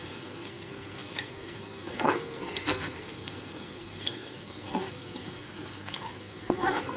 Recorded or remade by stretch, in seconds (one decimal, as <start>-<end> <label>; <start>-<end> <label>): 0.0-7.0 remade